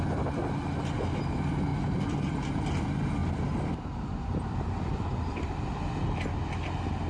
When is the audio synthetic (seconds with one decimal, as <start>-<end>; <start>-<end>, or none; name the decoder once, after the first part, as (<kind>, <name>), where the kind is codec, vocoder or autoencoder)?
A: none